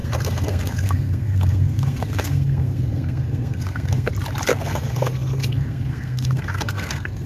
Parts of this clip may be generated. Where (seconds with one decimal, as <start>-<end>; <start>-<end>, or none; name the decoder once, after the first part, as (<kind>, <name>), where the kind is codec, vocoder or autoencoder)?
0.0-4.1 (codec, SNAC); 4.5-7.3